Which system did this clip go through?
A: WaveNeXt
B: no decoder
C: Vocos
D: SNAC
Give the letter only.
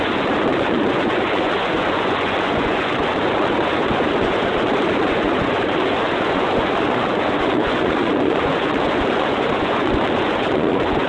C